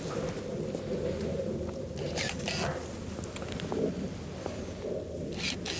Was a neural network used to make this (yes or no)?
no